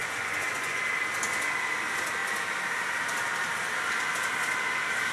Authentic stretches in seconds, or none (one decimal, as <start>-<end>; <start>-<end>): 0.8-5.1